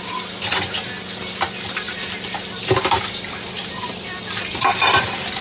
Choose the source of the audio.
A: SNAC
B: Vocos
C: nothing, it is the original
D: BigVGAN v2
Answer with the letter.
C